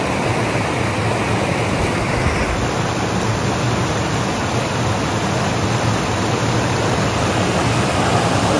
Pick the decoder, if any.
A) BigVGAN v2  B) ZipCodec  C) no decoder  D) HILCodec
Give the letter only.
C